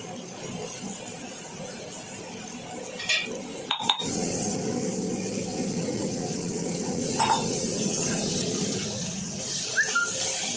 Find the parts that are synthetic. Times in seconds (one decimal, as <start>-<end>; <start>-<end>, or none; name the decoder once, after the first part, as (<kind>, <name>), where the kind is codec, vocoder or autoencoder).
1.2-1.8 (vocoder, Vocos); 3.5-4.6; 5.6-9.6